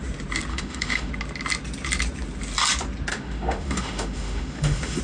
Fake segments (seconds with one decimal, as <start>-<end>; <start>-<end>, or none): 0.5-1.1; 3.1-5.0